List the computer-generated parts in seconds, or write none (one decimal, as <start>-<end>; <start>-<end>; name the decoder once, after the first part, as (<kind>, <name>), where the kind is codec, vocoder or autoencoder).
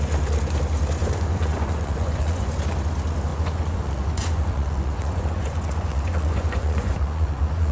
1.0-2.5 (vocoder, Vocos); 3.3-7.7